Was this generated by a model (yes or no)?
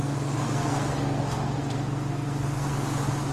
yes